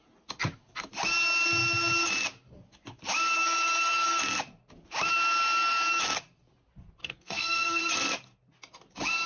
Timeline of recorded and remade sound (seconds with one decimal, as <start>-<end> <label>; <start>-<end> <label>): 0.0-7.0 recorded; 7.0-7.8 remade; 7.8-9.3 recorded